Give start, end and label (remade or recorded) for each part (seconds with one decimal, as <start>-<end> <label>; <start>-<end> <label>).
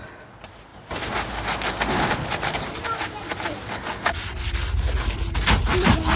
0.0-6.2 recorded